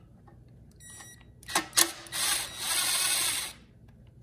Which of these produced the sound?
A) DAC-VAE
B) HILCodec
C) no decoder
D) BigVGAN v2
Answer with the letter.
C